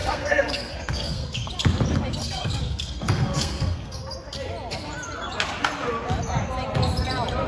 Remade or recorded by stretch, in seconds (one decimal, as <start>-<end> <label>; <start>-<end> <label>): 0.0-1.5 remade; 1.5-2.2 recorded; 2.2-4.0 remade; 4.0-7.5 recorded